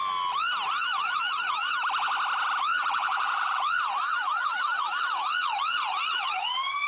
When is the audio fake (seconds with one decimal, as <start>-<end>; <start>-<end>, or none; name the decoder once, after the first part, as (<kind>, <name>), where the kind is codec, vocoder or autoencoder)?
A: 0.7-1.7 (vocoder, Vocos); 2.6-6.9